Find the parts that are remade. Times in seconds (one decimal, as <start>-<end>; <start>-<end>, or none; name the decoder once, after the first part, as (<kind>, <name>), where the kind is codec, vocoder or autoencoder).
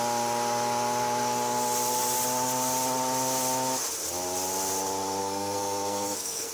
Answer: 5.2-6.5 (codec, SNAC)